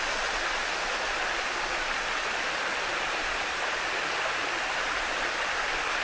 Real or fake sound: real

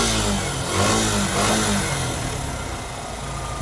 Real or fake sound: real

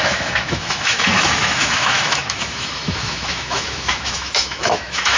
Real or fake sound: fake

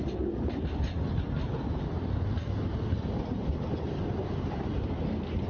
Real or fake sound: real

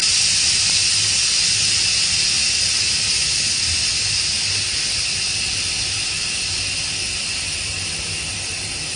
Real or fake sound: real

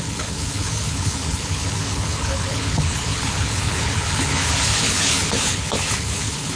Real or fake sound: fake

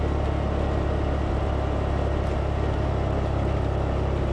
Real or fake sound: real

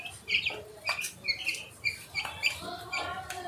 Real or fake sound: real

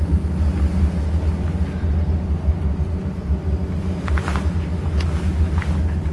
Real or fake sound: real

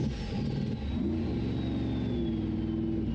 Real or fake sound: real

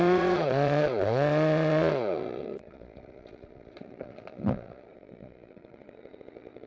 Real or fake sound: fake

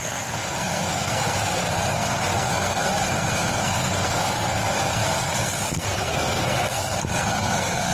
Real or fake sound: fake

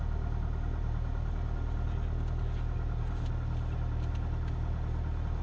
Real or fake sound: real